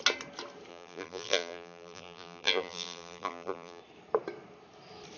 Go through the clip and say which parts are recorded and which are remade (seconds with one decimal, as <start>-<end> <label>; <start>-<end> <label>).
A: 0.0-0.7 recorded; 0.7-3.8 remade; 3.8-5.2 recorded